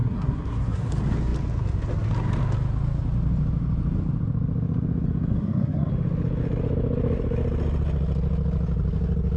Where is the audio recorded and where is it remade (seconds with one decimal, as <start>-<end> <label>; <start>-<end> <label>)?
0.0-0.9 remade; 0.9-5.3 recorded; 5.3-5.9 remade; 5.9-9.4 recorded